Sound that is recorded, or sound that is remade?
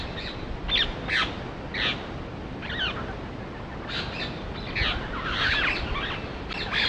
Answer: recorded